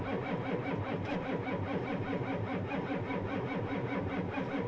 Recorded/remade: remade